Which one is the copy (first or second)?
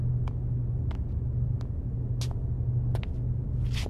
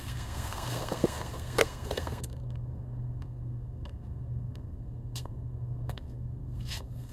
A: second